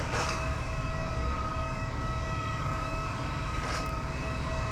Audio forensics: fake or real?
fake